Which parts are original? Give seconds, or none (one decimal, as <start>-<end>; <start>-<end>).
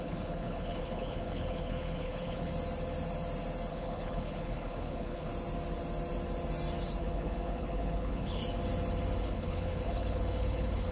2.5-3.7; 5.3-7.0; 8.4-9.2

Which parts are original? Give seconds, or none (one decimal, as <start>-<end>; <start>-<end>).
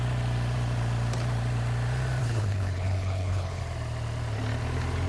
0.0-2.2; 3.6-5.1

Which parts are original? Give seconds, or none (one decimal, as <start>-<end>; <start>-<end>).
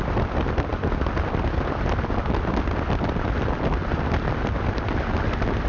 0.0-5.7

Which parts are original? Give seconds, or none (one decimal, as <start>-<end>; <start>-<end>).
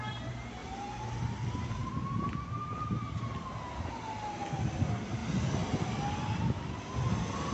0.0-0.6; 1.2-7.5